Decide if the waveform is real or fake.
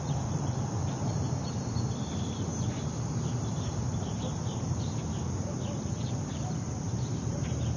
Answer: fake